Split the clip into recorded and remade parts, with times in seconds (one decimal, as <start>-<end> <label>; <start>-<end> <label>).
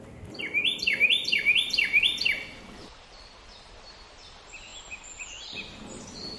0.0-6.4 recorded